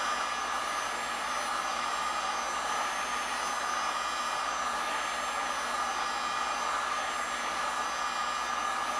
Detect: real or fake real